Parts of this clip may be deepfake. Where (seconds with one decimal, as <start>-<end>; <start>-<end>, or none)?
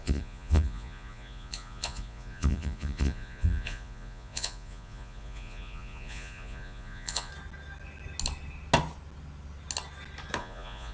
0.0-7.3; 10.4-10.9